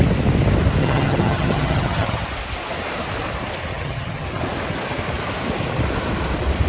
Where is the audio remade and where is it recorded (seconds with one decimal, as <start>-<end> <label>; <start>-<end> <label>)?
0.0-0.8 recorded; 0.8-2.2 remade; 2.2-3.7 recorded; 3.7-4.4 remade; 4.4-6.7 recorded